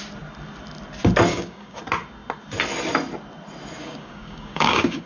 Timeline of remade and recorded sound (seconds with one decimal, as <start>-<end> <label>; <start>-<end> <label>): 0.0-1.3 recorded; 1.3-1.8 remade; 1.8-3.8 recorded; 3.8-5.1 remade